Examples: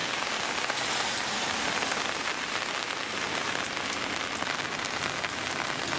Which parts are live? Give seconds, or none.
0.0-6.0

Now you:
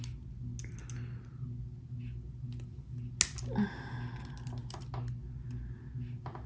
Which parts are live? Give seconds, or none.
0.0-6.5

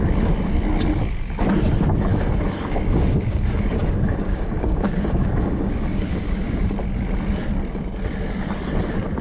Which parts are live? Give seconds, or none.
0.0-2.1; 6.6-9.2

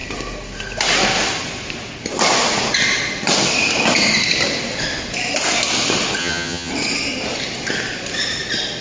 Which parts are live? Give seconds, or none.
0.0-6.2; 6.7-8.8

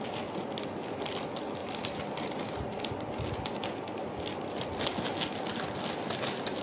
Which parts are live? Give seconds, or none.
0.0-6.6